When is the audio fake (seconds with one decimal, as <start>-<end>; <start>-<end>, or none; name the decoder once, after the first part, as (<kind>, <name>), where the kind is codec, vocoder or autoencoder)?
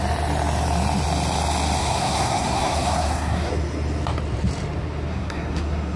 1.8-3.5 (codec, SNAC); 5.1-6.0